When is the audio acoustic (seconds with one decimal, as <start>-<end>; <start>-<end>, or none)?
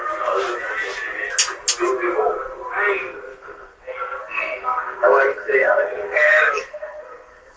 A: 0.0-3.0